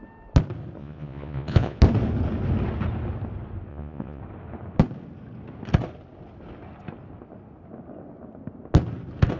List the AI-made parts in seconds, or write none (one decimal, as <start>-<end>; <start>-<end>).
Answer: 0.8-1.8; 3.7-4.2